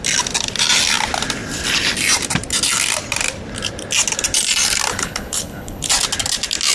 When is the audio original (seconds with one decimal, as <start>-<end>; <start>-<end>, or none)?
0.0-4.9; 5.9-6.7